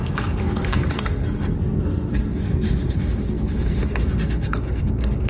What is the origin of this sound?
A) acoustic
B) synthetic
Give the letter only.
B